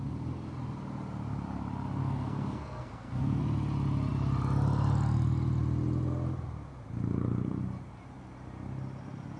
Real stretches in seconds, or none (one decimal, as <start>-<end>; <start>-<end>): 0.0-2.0; 3.4-9.4